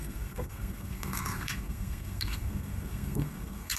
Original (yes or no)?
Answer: no